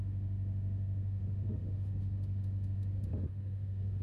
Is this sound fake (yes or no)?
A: yes